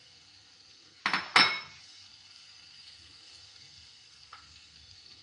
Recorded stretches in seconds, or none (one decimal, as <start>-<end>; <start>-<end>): 1.0-1.8